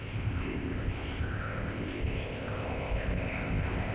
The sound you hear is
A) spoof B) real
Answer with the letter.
A